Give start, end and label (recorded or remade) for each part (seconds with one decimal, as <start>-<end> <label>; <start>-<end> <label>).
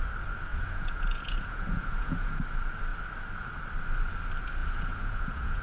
0.0-0.5 recorded; 0.5-2.4 remade; 2.4-4.6 recorded; 4.6-5.6 remade